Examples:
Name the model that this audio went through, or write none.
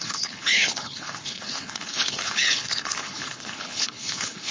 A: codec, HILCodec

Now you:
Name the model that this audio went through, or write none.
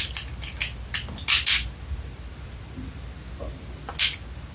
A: none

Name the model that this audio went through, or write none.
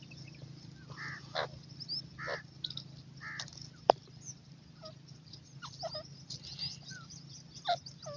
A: none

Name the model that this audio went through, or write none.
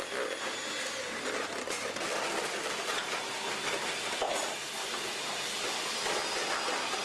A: none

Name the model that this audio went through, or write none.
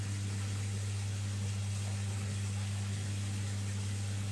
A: none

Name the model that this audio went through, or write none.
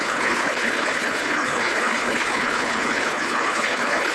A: codec, HILCodec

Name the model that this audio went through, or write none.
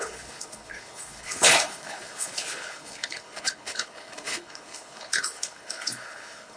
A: codec, HILCodec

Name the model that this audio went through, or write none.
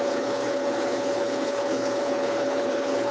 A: codec, HILCodec